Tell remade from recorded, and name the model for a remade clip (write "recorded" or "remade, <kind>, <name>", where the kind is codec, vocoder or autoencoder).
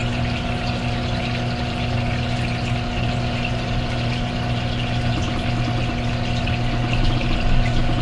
recorded